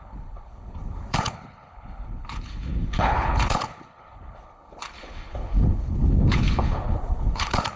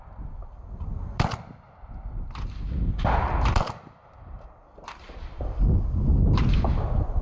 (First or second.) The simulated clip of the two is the first